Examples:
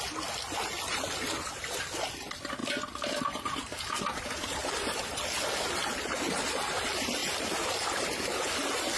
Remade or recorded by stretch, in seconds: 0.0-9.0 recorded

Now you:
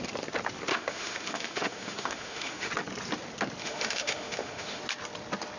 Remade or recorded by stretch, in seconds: 0.0-0.7 recorded; 0.7-2.7 remade; 2.7-3.6 recorded; 3.6-4.8 remade; 4.8-5.6 recorded

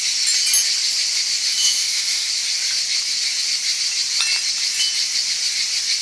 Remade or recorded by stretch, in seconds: 0.0-1.6 recorded; 1.6-2.3 remade; 2.3-6.0 recorded